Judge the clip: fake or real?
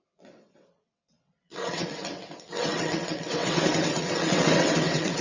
fake